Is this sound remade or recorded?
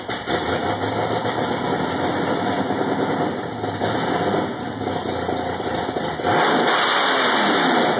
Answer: recorded